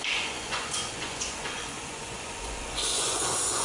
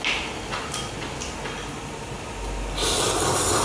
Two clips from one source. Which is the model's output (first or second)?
first